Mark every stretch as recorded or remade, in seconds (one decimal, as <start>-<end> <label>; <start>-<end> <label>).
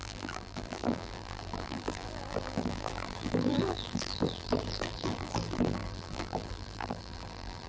0.0-7.7 remade